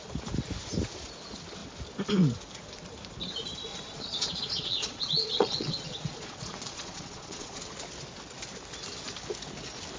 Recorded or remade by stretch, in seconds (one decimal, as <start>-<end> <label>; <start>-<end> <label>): 0.0-3.7 recorded; 3.7-7.6 remade; 7.6-10.0 recorded